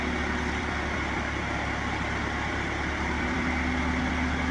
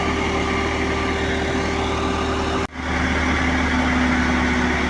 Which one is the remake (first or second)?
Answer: first